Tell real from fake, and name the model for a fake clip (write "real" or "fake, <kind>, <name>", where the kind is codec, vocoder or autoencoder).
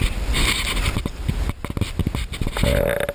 real